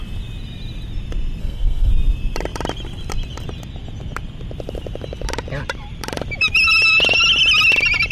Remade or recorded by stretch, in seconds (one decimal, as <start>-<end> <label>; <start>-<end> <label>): 0.0-1.4 recorded; 1.4-1.9 remade; 1.9-8.1 recorded